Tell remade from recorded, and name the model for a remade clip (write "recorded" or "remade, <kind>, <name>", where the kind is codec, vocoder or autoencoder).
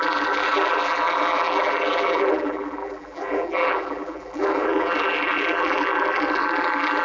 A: remade, vocoder, BigVGAN v2